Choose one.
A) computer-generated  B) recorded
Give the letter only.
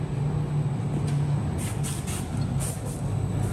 B